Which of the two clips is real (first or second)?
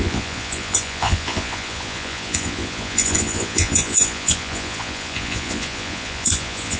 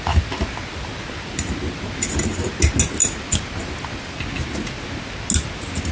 second